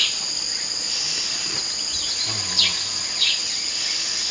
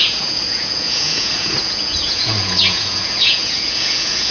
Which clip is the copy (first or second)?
second